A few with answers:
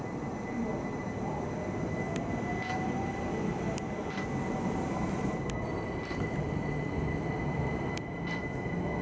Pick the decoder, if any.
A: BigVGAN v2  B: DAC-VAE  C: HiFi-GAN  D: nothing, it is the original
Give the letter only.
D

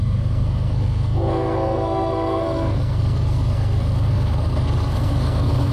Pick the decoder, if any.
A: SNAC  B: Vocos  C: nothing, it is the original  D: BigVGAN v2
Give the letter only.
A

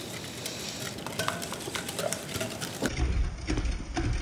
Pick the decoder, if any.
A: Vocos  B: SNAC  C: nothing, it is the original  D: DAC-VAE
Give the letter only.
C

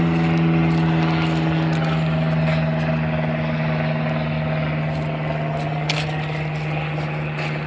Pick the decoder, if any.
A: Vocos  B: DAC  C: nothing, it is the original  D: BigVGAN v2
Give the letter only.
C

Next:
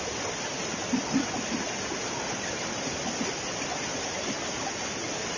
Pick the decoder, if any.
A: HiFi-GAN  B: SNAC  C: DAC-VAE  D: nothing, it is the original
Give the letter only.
D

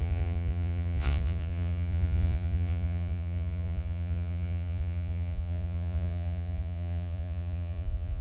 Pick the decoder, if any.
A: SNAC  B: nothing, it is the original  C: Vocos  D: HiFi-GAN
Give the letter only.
C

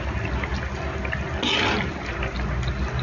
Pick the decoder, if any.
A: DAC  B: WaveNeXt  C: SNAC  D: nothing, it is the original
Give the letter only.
D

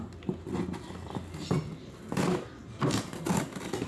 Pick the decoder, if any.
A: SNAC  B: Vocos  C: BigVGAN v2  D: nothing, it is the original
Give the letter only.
D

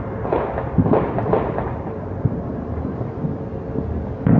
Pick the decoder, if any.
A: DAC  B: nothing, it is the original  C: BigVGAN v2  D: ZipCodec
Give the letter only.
B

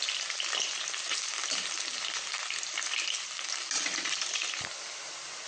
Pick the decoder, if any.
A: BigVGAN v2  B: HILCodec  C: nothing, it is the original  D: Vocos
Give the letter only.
C